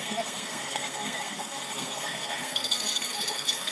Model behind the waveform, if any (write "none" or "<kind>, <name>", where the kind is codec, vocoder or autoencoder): codec, SNAC